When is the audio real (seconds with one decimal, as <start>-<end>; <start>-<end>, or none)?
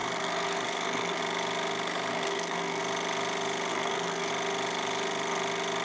1.2-2.1; 2.8-3.7; 4.3-5.8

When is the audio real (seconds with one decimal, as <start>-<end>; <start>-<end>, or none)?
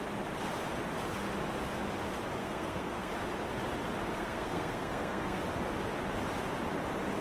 0.0-2.4; 3.1-4.1; 5.4-7.2